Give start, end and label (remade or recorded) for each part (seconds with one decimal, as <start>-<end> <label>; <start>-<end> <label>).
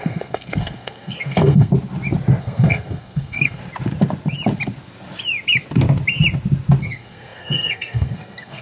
0.0-1.7 remade; 1.7-2.4 recorded; 2.4-3.6 remade; 3.6-6.8 recorded; 6.8-8.6 remade